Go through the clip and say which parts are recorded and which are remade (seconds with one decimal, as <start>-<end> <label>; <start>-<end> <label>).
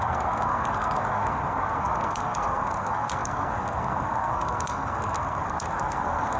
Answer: 0.0-6.4 remade